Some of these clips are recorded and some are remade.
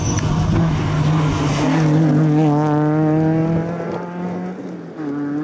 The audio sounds recorded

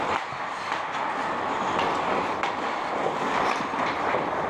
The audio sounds recorded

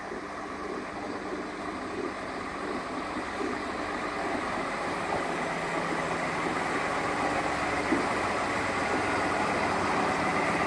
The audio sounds recorded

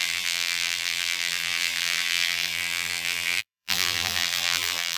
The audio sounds remade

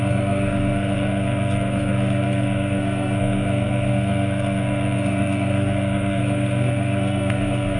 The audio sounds remade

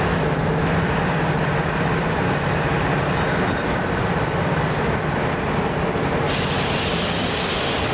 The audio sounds recorded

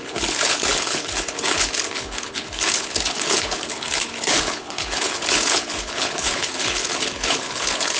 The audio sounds remade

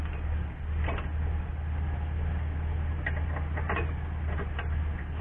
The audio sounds recorded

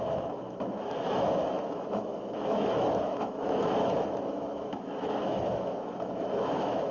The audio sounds remade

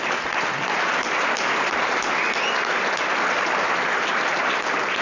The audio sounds recorded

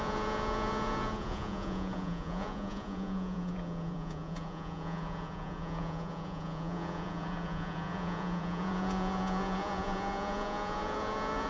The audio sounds remade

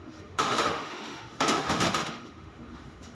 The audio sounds remade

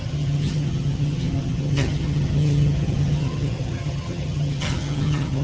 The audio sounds remade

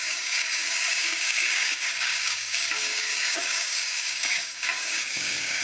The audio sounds remade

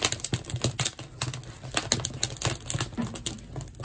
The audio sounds recorded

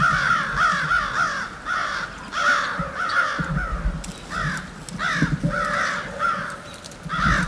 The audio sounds recorded